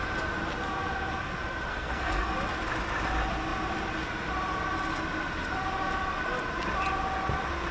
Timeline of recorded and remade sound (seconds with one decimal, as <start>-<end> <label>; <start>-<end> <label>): 0.0-1.7 recorded; 1.7-2.3 remade; 2.3-7.7 recorded